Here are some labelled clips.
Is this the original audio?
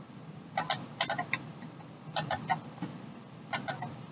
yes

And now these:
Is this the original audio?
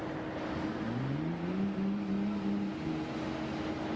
yes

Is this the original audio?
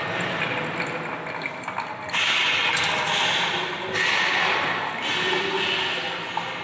yes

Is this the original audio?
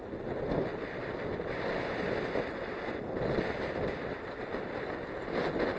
yes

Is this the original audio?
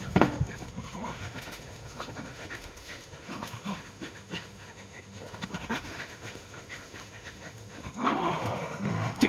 no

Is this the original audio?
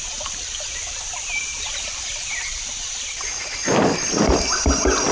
no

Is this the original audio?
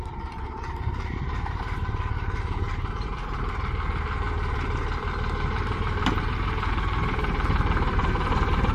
no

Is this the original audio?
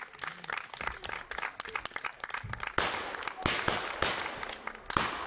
yes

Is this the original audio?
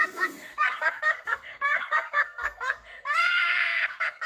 no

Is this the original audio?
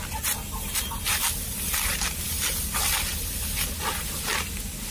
yes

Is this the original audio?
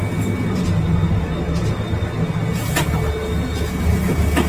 yes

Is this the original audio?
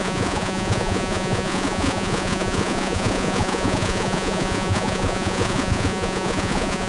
no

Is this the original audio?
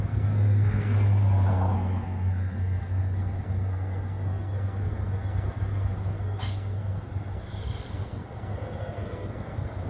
no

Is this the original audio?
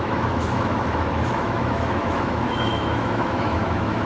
no